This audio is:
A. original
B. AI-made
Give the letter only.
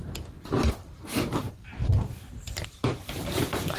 B